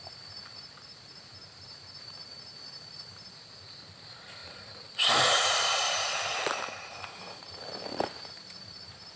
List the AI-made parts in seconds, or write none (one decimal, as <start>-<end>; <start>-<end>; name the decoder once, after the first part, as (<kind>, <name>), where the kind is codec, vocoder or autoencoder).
0.0-9.2 (vocoder, BigVGAN v2)